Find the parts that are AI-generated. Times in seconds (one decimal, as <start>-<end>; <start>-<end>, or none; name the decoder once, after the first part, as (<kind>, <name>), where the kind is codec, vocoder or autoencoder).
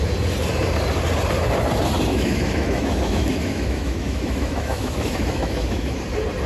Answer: 2.1-6.0 (autoencoder, DAC-VAE)